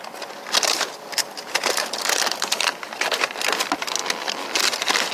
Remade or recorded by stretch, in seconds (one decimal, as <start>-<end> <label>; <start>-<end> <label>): 0.0-5.1 recorded